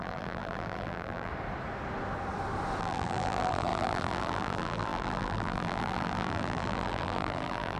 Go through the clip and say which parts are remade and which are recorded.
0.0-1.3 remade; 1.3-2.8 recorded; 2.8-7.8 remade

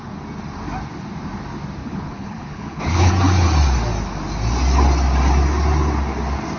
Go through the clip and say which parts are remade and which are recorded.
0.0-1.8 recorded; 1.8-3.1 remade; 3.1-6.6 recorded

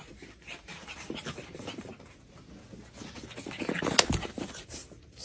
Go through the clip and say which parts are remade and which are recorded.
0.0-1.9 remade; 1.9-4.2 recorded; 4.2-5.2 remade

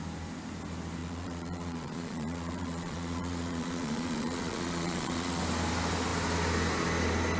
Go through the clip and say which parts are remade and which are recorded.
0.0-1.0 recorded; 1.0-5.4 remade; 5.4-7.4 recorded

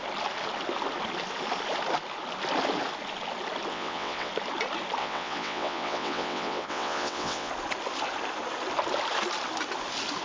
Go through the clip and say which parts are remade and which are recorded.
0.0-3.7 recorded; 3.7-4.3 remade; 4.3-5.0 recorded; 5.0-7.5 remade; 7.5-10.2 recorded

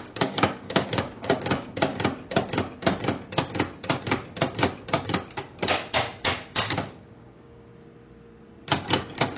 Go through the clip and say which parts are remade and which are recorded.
0.0-1.9 remade; 1.9-7.0 recorded; 7.0-7.7 remade; 7.7-9.4 recorded

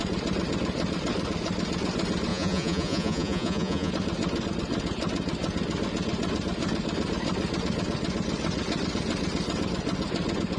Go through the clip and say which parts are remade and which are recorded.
0.0-2.3 recorded; 2.3-3.9 remade; 3.9-10.6 recorded

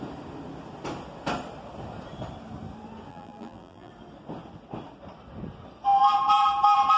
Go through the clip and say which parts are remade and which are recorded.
0.0-3.1 recorded; 3.1-3.9 remade; 3.9-7.0 recorded